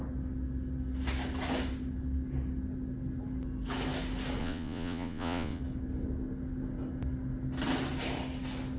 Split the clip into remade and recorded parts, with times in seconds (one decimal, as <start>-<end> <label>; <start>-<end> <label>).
0.0-4.4 recorded; 4.4-5.6 remade; 5.6-8.8 recorded